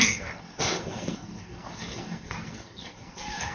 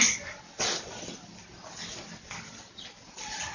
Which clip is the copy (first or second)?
first